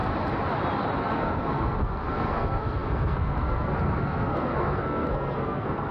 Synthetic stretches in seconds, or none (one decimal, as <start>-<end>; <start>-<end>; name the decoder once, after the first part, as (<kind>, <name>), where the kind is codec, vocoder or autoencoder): 1.0-5.9 (codec, SNAC)

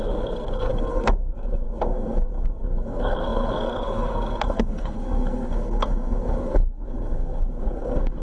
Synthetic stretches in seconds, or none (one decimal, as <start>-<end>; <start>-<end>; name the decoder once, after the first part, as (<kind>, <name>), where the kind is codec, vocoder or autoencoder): 0.0-8.2 (codec, SNAC)

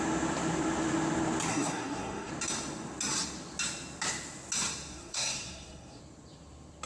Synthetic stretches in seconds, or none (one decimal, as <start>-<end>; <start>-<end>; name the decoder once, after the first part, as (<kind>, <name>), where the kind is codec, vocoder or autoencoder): 1.5-2.3 (codec, SNAC); 4.9-6.0

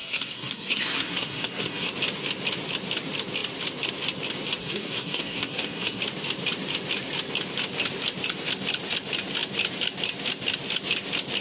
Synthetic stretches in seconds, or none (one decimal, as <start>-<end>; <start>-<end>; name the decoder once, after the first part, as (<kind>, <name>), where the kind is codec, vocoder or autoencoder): 0.0-1.9 (codec, SNAC); 4.6-6.0

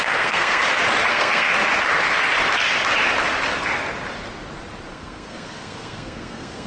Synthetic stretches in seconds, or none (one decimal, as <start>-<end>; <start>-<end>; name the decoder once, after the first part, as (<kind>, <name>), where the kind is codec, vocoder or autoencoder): 0.0-0.6 (codec, SNAC); 1.1-1.5; 4.9-6.7

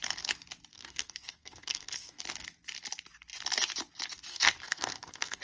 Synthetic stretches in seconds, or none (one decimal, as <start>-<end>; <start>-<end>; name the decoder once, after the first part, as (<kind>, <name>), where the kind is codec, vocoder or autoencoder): 0.7-2.2 (codec, SNAC); 4.3-5.4